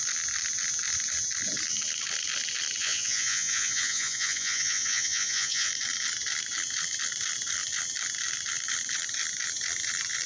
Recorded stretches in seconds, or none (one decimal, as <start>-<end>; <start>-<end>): 0.0-2.8; 5.7-10.3